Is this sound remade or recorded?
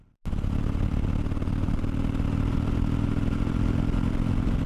recorded